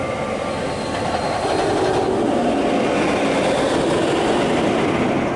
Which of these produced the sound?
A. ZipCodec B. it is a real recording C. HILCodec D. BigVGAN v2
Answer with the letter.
B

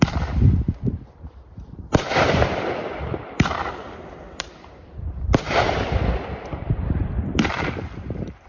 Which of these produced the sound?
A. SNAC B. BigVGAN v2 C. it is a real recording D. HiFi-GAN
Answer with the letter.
B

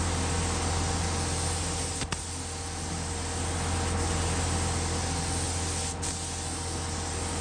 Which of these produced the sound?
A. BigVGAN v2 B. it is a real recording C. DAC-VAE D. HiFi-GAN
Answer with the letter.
B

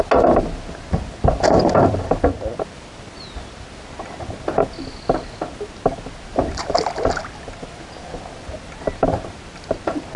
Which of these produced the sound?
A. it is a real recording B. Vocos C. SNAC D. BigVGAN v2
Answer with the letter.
A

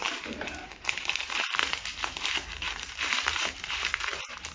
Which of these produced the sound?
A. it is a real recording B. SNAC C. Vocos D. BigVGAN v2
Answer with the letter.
D